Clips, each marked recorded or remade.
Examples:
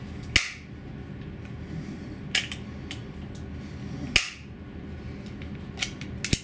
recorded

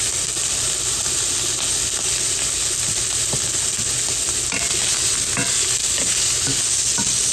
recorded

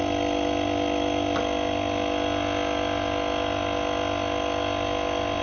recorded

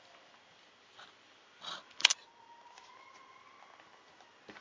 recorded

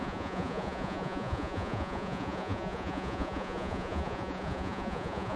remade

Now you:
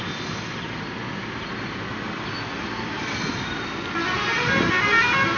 recorded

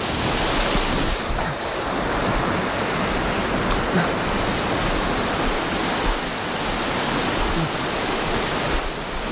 recorded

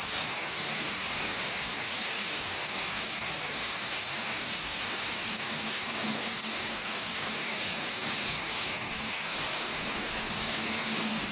remade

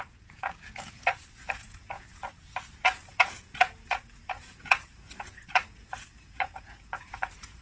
remade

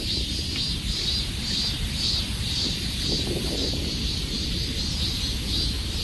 remade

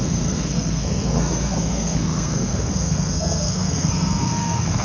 remade